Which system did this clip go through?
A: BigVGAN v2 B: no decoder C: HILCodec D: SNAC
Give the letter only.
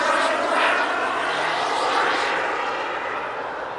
B